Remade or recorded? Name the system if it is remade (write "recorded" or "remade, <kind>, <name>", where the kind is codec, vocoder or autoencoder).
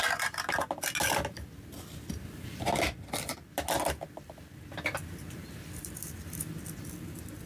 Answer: recorded